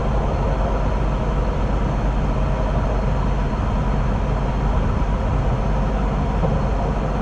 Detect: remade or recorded recorded